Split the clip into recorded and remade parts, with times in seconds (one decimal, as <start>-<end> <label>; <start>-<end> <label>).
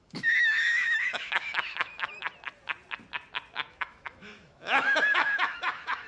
0.0-2.2 remade; 2.2-3.7 recorded; 3.7-6.1 remade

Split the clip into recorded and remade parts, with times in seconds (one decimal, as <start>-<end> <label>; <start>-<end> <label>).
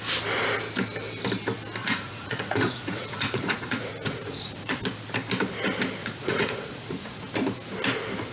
0.0-1.8 recorded; 1.8-4.8 remade; 4.8-6.0 recorded; 6.0-7.2 remade; 7.2-8.3 recorded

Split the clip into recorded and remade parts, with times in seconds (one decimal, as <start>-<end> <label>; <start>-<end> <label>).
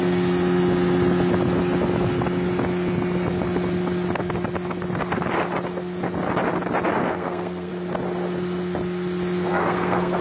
0.0-7.0 recorded; 7.0-7.7 remade; 7.7-9.5 recorded; 9.5-10.2 remade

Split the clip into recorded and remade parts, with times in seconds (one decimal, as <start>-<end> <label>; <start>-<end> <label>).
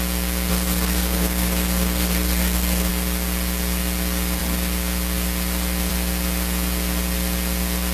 0.0-0.5 recorded; 0.5-2.9 remade; 2.9-7.9 recorded